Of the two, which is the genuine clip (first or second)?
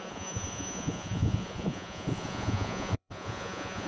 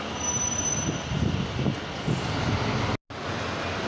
second